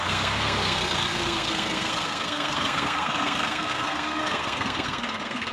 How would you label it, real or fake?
fake